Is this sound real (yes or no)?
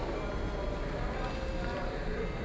yes